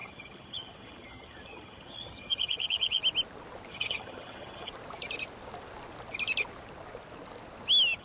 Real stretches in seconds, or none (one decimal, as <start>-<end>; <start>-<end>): 3.0-3.7; 4.7-8.0